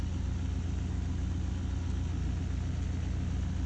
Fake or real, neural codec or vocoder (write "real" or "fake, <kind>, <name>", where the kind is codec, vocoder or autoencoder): real